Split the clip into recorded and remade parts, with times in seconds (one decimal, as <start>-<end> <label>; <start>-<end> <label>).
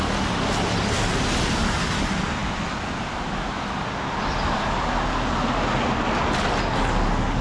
0.0-7.4 recorded